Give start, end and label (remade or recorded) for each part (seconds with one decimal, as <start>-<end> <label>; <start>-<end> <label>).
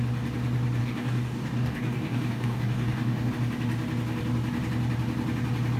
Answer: 0.0-0.8 recorded; 0.8-3.3 remade; 3.3-5.8 recorded